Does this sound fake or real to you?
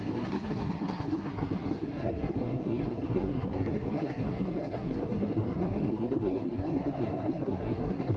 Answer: fake